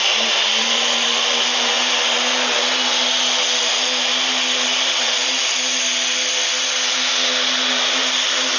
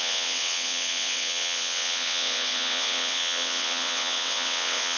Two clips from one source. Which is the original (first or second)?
first